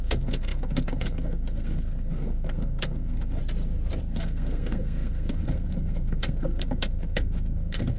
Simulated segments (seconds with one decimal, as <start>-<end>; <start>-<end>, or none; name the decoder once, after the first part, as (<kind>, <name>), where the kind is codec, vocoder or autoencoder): 0.0-3.4 (codec, SNAC); 4.0-8.0